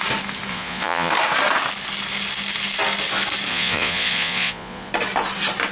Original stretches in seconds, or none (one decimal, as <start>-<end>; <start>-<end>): 0.0-0.5; 1.1-3.5; 4.9-5.7